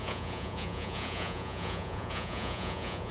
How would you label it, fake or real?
fake